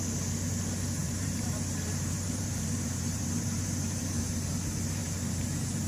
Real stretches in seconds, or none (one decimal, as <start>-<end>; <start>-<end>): 0.0-1.0; 4.5-5.0